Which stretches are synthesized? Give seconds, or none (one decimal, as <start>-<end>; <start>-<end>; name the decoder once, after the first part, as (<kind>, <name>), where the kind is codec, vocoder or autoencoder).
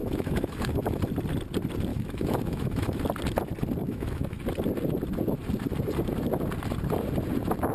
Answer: 0.0-1.0 (autoencoder, DAC-VAE); 1.9-3.0; 3.8-4.4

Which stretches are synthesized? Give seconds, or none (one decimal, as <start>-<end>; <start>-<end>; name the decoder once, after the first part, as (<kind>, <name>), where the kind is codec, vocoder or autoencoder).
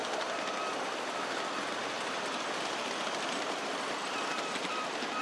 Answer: none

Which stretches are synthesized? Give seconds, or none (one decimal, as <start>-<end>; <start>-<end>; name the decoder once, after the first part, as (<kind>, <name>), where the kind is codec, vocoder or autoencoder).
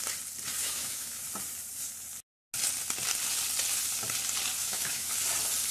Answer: 0.6-1.2 (autoencoder, DAC-VAE); 4.6-5.1